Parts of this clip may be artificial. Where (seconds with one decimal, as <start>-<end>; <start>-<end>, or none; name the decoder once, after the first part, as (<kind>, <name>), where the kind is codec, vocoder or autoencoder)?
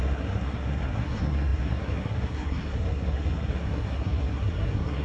0.0-5.0 (codec, SNAC)